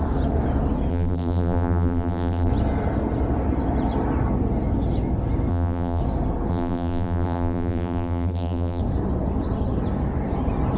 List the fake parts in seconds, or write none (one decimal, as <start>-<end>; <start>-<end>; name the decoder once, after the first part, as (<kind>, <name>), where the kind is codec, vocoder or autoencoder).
0.9-2.5 (vocoder, BigVGAN v2); 5.5-6.0; 6.5-8.8